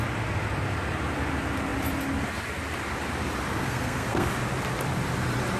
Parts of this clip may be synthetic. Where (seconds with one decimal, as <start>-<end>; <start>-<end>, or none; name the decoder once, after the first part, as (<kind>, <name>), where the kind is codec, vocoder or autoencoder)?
3.5-4.3 (codec, SNAC)